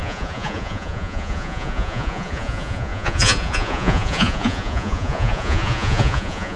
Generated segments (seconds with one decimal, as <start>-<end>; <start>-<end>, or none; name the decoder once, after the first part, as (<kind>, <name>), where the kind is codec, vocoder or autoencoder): 0.0-6.6 (vocoder, Vocos)